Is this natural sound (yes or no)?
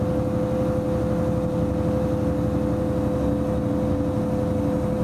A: yes